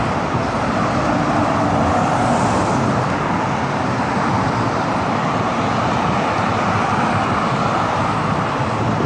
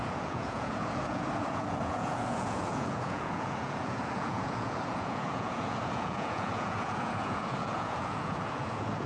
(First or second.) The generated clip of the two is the second